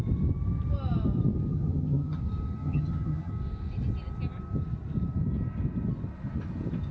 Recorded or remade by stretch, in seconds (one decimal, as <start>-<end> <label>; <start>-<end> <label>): 0.0-1.5 recorded; 1.5-2.2 remade; 2.2-2.6 recorded; 2.6-3.3 remade; 3.3-6.9 recorded